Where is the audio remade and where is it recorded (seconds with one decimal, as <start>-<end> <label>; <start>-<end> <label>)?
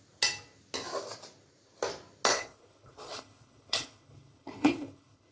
0.0-2.3 recorded; 2.3-5.3 remade